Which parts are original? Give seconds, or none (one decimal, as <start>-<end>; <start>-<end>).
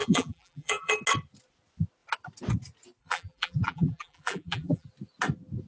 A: 0.9-3.0; 4.9-5.7